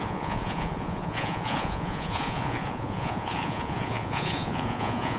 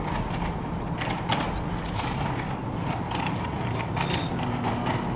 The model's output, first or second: first